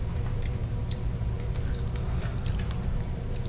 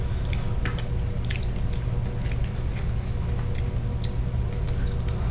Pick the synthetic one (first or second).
first